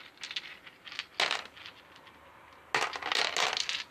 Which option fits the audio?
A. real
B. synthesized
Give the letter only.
A